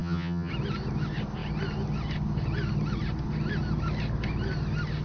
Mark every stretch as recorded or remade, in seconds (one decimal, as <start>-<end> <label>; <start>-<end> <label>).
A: 0.0-0.5 remade; 0.5-5.0 recorded

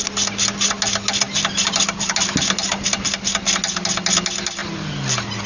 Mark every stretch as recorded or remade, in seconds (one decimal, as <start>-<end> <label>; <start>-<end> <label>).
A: 0.0-5.5 recorded

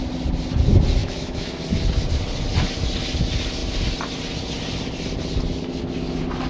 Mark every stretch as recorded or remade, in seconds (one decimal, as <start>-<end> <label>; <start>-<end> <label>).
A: 0.0-1.0 recorded; 1.0-1.6 remade; 1.6-6.5 recorded

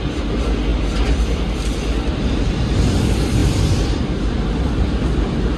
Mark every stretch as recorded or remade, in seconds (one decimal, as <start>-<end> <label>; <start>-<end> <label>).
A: 0.0-0.7 recorded; 0.7-2.5 remade; 2.5-3.4 recorded; 3.4-4.7 remade; 4.7-5.6 recorded